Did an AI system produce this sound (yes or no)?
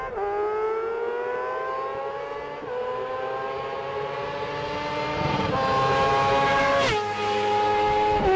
no